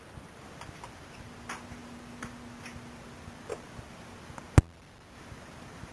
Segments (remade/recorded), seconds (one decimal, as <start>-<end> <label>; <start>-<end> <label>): 0.0-5.9 recorded